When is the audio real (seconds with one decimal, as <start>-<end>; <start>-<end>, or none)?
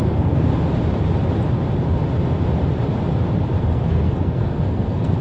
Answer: 0.5-3.6